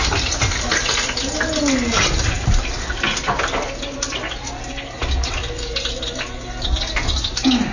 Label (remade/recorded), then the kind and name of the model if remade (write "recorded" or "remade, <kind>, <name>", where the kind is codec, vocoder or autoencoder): recorded